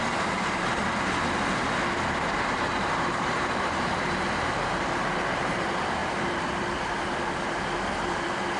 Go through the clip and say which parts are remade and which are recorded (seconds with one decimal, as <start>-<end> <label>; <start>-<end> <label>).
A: 0.0-0.8 remade; 0.8-2.8 recorded; 2.8-6.0 remade; 6.0-7.4 recorded; 7.4-8.6 remade